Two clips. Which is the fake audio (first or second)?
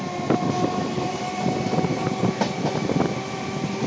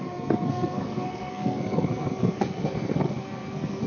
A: second